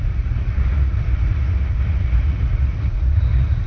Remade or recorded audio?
remade